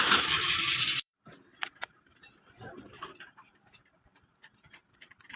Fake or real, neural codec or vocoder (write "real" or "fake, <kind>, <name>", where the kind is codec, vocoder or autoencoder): fake, vocoder, BigVGAN v2